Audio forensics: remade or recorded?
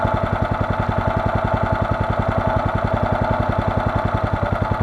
recorded